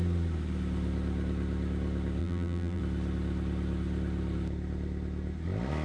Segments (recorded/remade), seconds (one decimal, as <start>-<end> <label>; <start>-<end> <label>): 0.0-2.2 recorded; 2.2-2.8 remade; 2.8-5.8 recorded